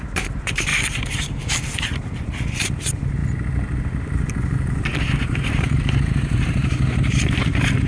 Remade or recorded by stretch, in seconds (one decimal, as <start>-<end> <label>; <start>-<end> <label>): 0.0-3.2 remade; 3.2-5.1 recorded; 5.1-7.9 remade